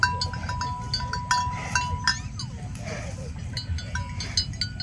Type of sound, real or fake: real